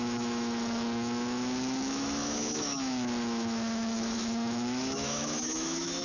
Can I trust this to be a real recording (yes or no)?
no